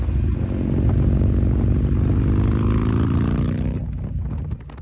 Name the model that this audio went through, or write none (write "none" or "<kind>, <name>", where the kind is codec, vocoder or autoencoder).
none